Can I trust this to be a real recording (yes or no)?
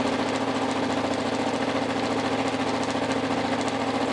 yes